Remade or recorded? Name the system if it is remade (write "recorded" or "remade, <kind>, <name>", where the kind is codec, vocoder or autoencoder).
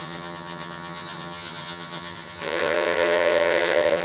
remade, vocoder, HiFi-GAN